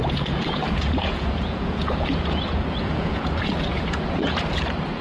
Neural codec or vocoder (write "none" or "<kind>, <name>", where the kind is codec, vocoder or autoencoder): vocoder, Vocos